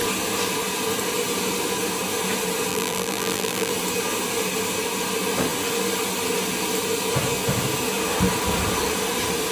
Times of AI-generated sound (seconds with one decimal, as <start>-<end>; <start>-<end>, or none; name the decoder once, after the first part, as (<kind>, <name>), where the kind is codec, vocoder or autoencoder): 2.7-3.7 (vocoder, BigVGAN v2)